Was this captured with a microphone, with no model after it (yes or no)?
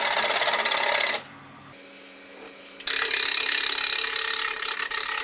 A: yes